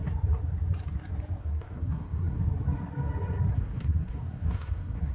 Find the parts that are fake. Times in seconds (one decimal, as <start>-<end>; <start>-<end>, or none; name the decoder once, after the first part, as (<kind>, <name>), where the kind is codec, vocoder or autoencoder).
1.4-2.4 (codec, SNAC); 3.5-5.1

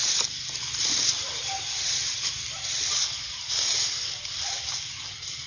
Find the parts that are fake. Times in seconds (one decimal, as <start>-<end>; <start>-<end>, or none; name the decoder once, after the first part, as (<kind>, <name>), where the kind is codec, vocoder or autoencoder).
none

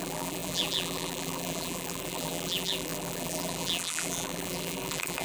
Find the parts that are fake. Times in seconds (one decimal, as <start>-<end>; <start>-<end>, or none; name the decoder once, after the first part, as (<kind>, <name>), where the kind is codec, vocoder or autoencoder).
0.0-5.2 (vocoder, BigVGAN v2)

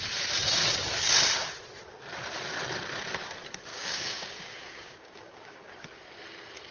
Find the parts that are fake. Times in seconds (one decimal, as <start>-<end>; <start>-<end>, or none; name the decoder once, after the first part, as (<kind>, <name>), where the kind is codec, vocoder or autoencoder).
3.7-5.7 (codec, DAC)